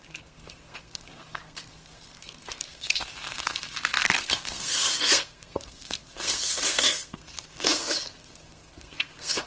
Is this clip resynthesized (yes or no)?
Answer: yes